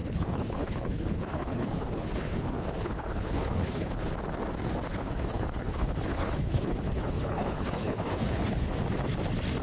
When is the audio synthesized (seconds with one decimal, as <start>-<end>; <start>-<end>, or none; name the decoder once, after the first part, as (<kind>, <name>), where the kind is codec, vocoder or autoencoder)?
0.0-4.1 (codec, HILCodec); 4.9-8.7